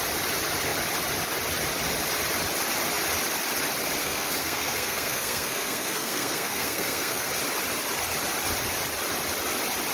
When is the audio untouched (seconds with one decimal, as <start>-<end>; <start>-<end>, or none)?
0.0-4.0; 7.3-9.9